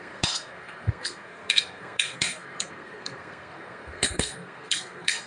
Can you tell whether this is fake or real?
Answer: fake